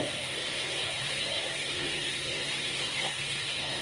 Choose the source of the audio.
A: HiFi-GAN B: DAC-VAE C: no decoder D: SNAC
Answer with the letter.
D